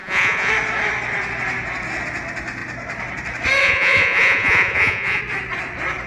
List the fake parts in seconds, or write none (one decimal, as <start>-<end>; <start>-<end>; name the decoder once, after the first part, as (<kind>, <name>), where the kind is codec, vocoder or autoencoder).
0.0-0.5 (vocoder, Vocos); 3.6-5.2